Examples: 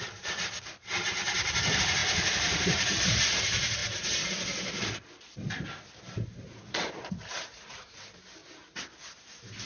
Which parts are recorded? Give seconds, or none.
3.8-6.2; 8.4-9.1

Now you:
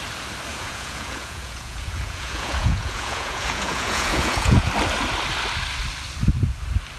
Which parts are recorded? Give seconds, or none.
0.0-0.5; 4.7-7.0

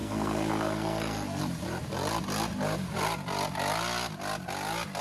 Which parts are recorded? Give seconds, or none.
1.4-5.0

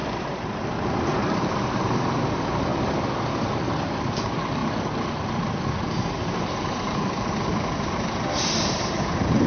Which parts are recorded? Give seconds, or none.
2.7-3.3; 4.6-5.8

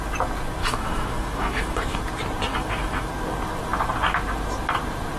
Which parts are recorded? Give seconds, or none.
0.0-0.6; 2.0-2.5; 3.1-5.2